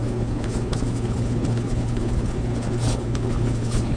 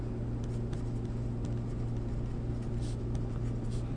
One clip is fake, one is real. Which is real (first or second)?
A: second